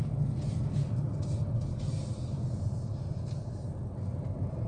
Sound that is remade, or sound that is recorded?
recorded